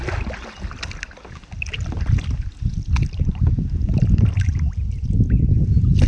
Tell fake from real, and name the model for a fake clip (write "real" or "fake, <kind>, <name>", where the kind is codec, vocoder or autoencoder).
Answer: real